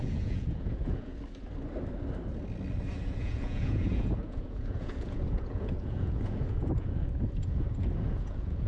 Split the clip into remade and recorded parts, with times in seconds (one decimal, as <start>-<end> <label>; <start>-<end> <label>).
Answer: 0.0-1.1 remade; 1.1-3.2 recorded; 3.2-8.7 remade